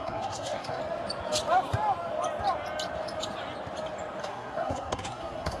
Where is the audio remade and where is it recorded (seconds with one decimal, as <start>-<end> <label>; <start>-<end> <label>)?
0.0-0.8 remade; 0.8-4.2 recorded; 4.2-5.6 remade